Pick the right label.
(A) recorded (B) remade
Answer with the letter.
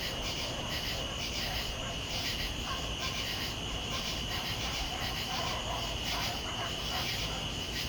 B